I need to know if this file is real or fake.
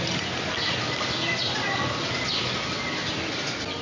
real